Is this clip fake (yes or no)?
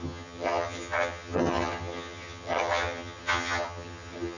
yes